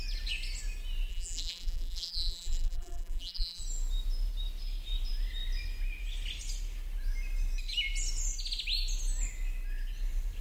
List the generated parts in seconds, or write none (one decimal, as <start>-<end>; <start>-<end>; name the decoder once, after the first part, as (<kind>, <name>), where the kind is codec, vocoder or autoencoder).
1.1-3.6 (vocoder, BigVGAN v2)